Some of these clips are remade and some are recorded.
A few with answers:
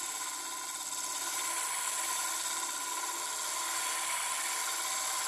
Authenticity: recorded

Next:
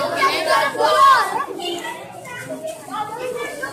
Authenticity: recorded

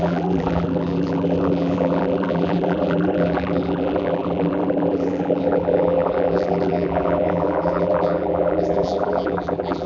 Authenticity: remade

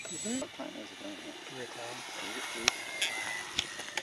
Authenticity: recorded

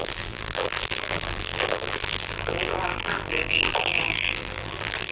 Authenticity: remade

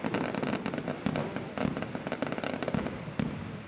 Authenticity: recorded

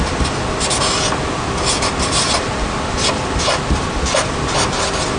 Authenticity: recorded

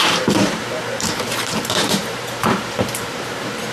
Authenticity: remade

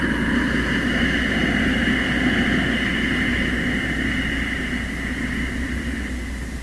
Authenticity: recorded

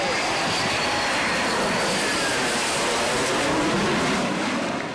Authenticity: remade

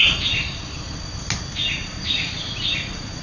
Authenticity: recorded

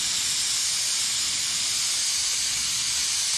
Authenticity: recorded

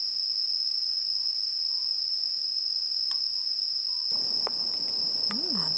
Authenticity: remade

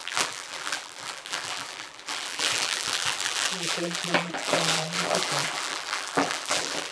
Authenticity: remade